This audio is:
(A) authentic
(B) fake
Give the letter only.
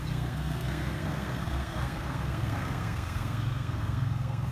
B